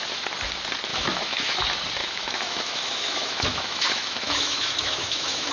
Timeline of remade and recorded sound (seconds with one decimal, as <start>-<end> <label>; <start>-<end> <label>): 0.0-0.9 recorded; 0.9-1.6 remade; 1.6-2.0 recorded; 2.0-5.5 remade